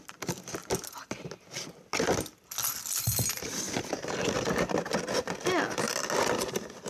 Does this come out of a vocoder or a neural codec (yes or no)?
no